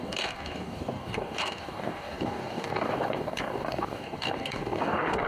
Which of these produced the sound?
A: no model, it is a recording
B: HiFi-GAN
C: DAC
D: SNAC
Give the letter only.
C